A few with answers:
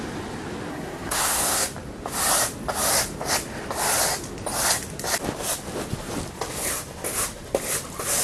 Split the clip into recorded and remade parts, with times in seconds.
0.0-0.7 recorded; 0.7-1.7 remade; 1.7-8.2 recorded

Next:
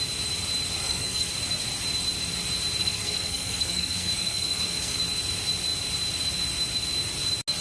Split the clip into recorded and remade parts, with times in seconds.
0.0-0.8 recorded; 0.8-1.3 remade; 1.3-2.8 recorded; 2.8-5.0 remade; 5.0-7.6 recorded

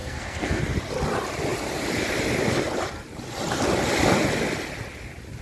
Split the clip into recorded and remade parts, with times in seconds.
0.0-0.6 remade; 0.6-5.4 recorded

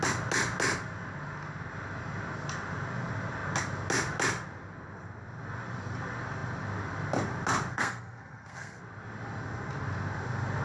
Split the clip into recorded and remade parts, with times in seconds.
0.0-7.7 recorded; 7.7-8.8 remade; 8.8-10.6 recorded

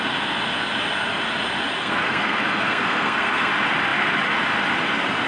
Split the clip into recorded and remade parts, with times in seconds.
0.0-1.8 recorded; 1.8-3.5 remade; 3.5-5.3 recorded

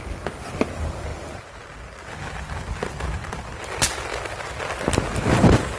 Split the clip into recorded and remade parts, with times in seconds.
0.0-5.8 recorded

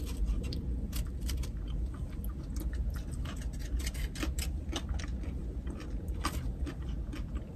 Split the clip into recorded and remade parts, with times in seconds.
0.0-7.6 recorded

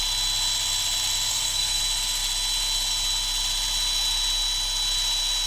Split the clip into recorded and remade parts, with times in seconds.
0.0-1.3 recorded; 1.3-1.8 remade; 1.8-5.5 recorded